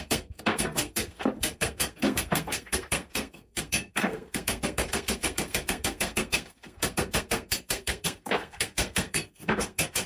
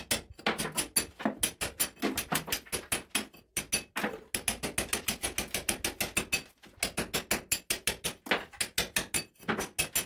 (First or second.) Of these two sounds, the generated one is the first